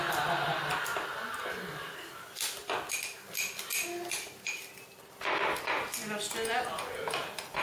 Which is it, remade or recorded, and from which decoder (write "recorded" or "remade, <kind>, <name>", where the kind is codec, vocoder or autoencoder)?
recorded